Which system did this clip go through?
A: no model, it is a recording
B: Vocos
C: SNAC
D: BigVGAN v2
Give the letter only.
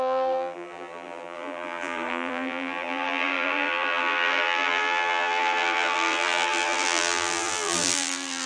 D